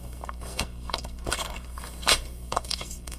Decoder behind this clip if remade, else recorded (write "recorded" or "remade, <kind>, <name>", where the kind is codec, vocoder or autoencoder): remade, codec, SNAC